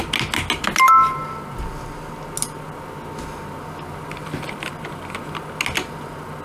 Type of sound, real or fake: real